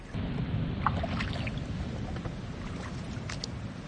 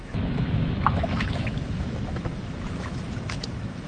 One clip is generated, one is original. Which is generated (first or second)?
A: second